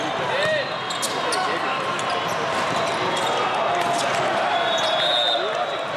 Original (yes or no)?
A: yes